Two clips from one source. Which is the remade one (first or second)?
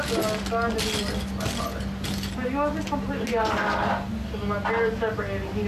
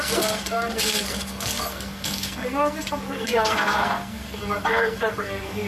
second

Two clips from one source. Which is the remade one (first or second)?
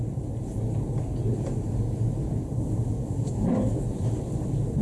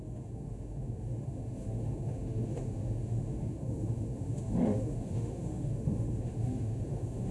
second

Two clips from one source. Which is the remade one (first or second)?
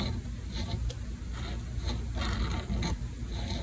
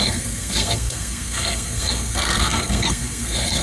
second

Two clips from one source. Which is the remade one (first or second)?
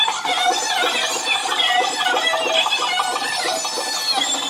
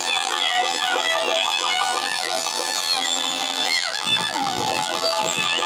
second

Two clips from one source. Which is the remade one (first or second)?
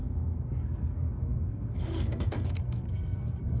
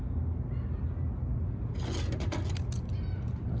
first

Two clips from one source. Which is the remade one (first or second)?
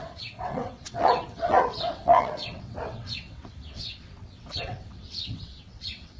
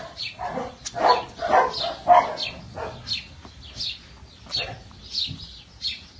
first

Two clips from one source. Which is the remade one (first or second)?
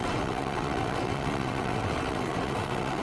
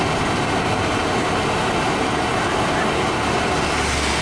first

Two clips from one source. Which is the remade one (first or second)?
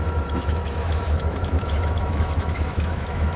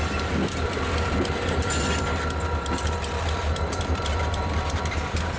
first